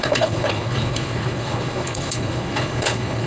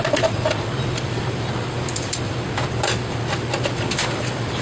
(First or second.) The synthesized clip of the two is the first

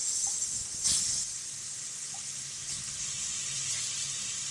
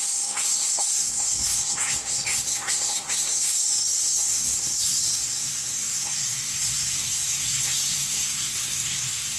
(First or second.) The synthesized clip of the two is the second